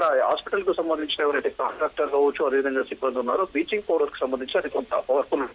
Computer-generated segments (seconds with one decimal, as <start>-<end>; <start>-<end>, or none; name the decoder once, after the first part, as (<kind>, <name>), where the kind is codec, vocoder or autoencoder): 1.0-1.7 (vocoder, WaveNeXt); 2.8-4.0; 4.5-5.1

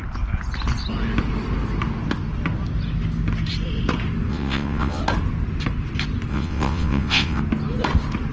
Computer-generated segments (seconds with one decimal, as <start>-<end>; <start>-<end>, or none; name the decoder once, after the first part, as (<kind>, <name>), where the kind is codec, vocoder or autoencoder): 4.3-5.0 (vocoder, WaveNeXt); 6.3-7.4